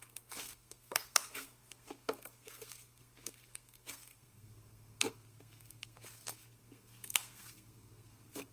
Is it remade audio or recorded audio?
remade